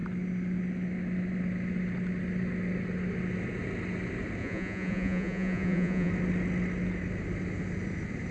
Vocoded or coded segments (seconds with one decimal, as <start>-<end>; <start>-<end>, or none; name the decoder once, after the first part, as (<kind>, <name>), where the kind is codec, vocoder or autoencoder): 4.4-6.1 (vocoder, Vocos)